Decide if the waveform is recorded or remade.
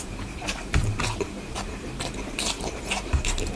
remade